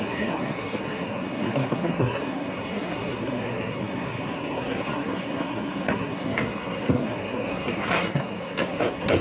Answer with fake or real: fake